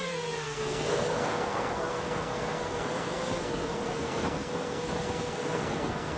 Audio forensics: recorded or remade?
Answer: remade